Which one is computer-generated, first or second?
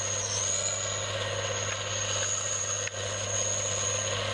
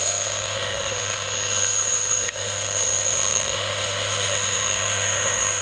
second